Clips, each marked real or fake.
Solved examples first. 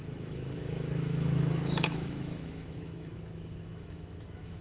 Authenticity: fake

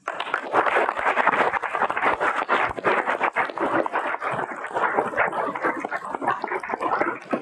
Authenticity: real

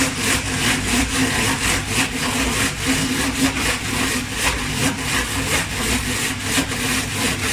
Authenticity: real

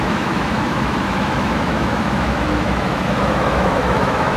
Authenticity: fake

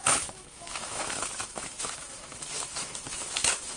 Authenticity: fake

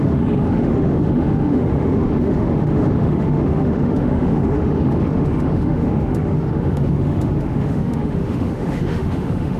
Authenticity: fake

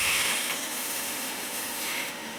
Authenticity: fake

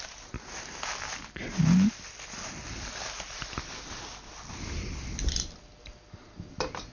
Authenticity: real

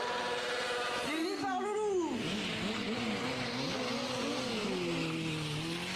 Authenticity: real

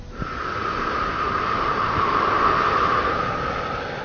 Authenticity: real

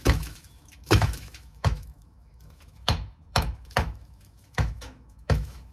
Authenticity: fake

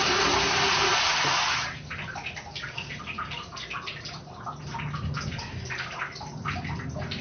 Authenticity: real